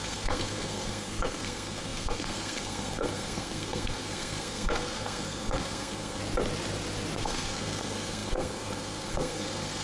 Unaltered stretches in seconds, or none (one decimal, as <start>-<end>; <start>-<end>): 6.2-7.2

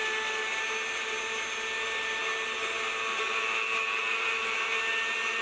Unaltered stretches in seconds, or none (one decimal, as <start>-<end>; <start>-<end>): 0.0-5.4

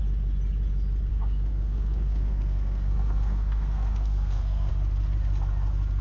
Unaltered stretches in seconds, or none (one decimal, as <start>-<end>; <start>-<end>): 0.0-1.1; 4.7-6.0

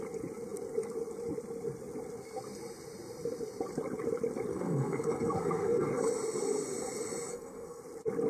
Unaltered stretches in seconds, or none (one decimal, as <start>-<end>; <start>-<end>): 0.0-4.5; 5.9-7.3; 7.8-8.3

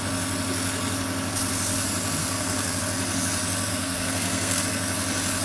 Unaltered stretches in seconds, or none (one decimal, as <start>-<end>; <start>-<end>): 0.0-2.2; 2.8-3.7; 4.6-5.4

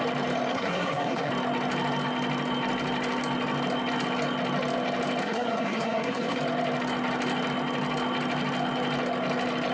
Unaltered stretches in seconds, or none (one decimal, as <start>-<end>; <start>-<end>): 0.0-0.5; 1.3-5.2; 6.4-9.7